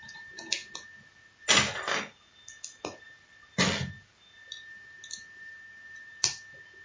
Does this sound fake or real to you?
real